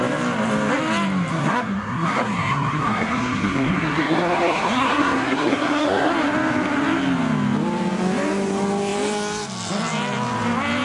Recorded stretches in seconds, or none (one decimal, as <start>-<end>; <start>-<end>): 0.0-1.3; 6.1-10.8